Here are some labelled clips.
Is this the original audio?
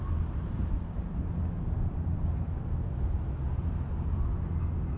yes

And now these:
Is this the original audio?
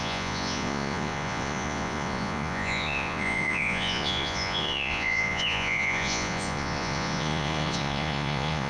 no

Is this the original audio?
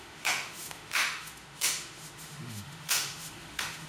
no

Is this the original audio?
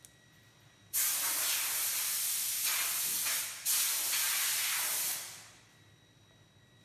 yes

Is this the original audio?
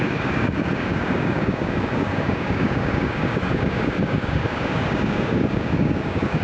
no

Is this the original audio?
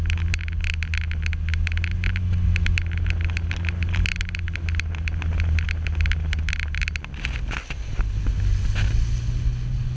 yes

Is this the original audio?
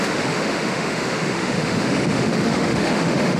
no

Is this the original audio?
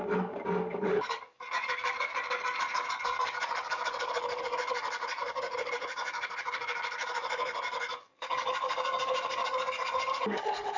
no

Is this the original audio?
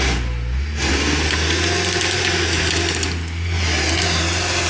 yes